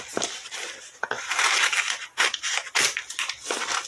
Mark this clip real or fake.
real